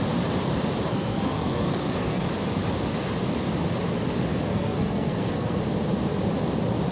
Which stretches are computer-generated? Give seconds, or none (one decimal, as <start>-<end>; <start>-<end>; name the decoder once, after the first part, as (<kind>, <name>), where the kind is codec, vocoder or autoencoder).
0.9-2.3 (codec, SNAC); 4.5-5.6